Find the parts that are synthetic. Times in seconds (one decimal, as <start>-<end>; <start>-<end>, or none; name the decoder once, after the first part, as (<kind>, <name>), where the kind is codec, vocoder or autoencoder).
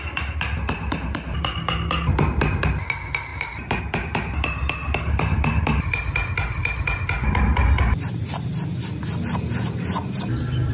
3.3-3.8 (vocoder, BigVGAN v2); 4.8-5.8